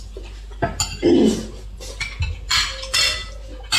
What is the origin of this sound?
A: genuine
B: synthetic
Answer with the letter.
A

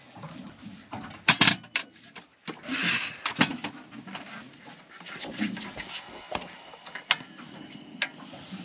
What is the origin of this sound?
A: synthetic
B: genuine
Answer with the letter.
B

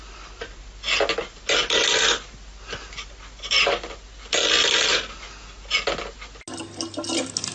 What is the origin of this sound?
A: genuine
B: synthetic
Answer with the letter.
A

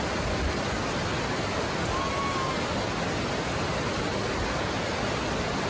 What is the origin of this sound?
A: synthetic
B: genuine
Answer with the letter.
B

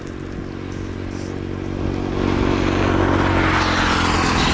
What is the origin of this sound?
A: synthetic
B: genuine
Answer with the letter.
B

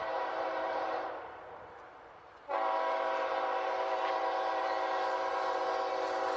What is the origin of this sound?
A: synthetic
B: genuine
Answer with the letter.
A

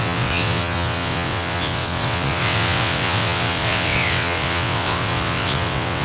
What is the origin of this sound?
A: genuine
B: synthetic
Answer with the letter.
B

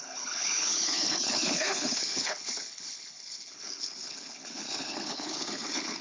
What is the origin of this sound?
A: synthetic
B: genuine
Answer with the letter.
A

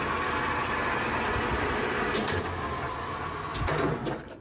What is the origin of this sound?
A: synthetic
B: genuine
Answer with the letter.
B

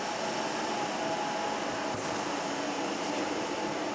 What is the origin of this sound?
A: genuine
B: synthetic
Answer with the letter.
A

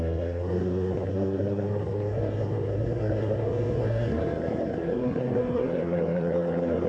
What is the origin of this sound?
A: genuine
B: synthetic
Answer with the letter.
B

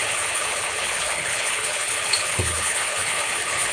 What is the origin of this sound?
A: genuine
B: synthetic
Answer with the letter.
B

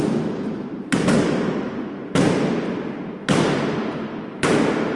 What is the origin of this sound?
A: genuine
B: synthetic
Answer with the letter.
B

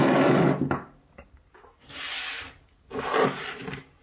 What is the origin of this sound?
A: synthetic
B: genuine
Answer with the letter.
B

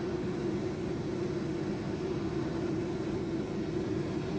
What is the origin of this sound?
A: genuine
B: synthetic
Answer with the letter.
A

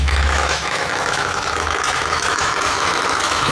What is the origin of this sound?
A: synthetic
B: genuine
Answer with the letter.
A